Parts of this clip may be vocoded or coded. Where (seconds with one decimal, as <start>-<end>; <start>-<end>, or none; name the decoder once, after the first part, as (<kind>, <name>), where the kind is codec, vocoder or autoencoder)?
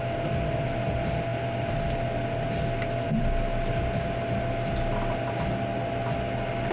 none